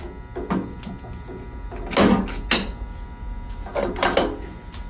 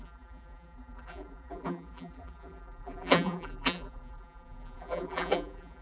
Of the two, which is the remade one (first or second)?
second